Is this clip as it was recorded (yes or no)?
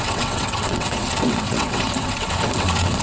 no